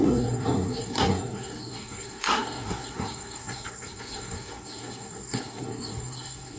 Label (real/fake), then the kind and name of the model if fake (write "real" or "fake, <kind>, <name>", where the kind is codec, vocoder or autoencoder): fake, codec, SNAC